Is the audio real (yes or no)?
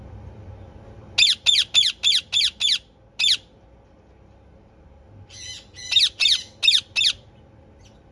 yes